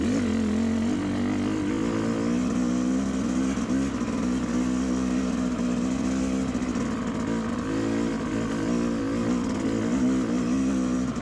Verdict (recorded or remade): recorded